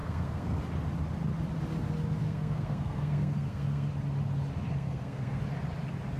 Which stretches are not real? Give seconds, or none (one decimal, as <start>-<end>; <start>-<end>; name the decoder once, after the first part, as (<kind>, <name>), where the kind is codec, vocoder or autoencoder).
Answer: 0.0-0.6 (codec, SNAC); 2.2-3.9; 4.7-5.4